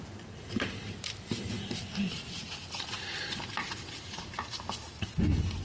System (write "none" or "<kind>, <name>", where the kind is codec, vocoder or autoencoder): vocoder, BigVGAN v2